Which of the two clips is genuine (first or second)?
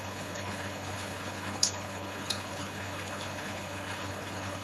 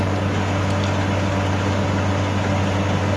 second